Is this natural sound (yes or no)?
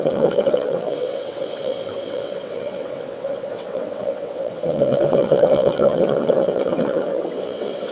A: no